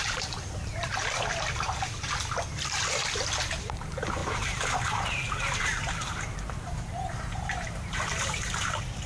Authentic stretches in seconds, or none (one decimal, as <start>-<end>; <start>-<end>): 1.0-3.6